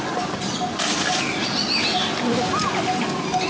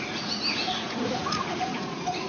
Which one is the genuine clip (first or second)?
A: first